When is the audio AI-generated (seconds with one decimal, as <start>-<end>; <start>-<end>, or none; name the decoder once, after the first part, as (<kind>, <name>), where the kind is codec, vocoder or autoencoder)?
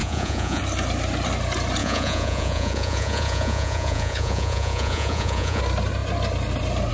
0.0-0.6 (vocoder, Vocos); 1.8-5.6